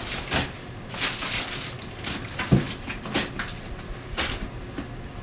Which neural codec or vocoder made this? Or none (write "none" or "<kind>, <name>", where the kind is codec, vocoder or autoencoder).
none